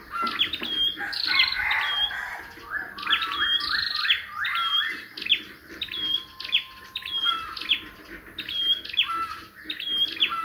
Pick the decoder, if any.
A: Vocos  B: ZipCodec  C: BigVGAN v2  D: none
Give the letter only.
D